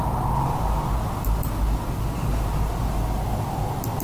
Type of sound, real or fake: real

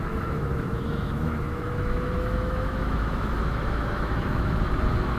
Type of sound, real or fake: fake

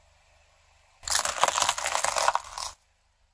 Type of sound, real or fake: real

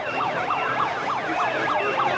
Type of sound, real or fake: real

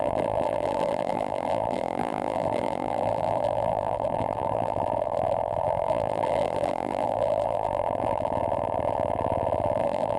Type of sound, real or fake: fake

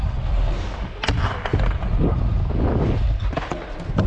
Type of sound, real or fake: real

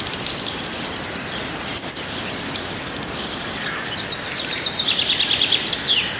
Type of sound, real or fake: fake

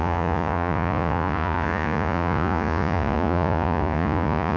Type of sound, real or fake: fake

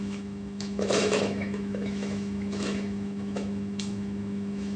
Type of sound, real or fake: fake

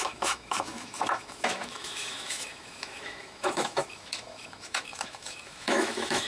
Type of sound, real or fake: fake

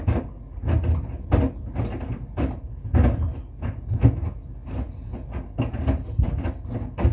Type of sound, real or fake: real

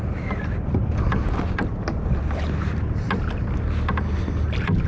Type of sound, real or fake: real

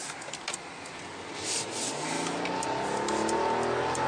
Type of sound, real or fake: real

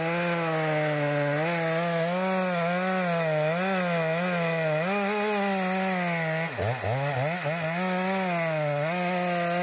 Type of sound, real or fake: real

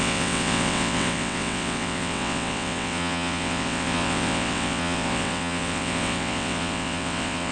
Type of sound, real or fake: fake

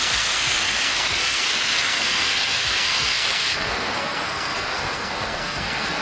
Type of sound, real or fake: fake